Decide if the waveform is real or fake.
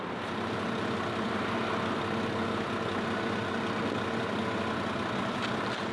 real